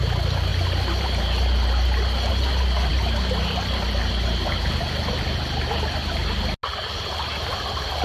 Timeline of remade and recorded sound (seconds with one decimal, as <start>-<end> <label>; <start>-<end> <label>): 0.0-8.0 recorded